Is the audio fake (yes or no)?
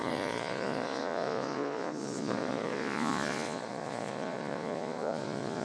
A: yes